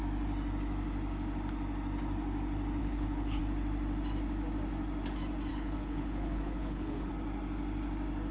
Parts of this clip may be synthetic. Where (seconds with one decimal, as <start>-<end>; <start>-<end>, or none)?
2.8-3.4; 5.5-7.1